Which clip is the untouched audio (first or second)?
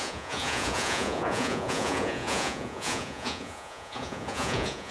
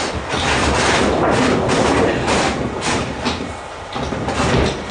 second